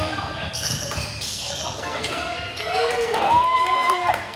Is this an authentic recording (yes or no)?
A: no